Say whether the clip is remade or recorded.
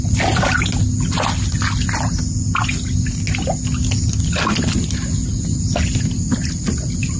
recorded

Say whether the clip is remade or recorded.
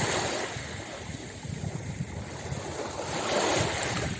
recorded